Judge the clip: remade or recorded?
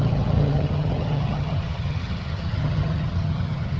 remade